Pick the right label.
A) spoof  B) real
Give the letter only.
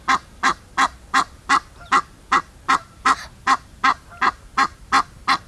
B